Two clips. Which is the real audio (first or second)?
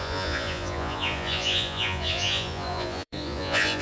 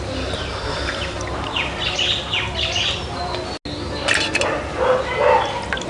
second